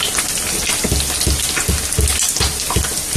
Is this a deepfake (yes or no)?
no